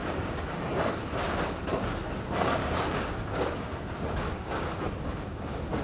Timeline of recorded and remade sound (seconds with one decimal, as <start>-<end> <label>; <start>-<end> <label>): 0.0-1.6 remade; 1.6-2.6 recorded; 2.6-4.7 remade; 4.7-5.8 recorded